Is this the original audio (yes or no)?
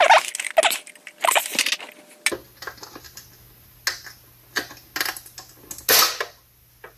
yes